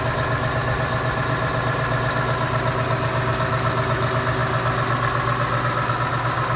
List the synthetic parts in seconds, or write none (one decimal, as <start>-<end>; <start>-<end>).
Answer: none